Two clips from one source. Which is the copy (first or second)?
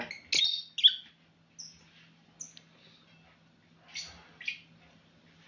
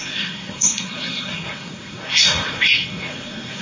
second